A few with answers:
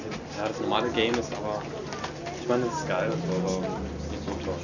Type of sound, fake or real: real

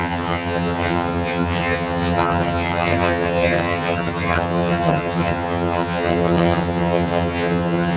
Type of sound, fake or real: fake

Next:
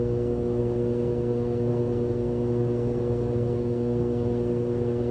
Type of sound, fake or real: fake